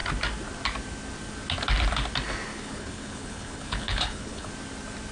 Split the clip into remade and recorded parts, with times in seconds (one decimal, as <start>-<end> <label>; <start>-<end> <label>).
0.0-2.5 recorded; 2.5-4.5 remade; 4.5-5.1 recorded